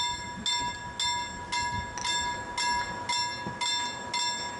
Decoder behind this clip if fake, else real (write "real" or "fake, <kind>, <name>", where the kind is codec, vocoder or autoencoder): real